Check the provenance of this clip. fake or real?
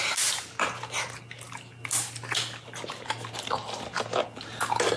real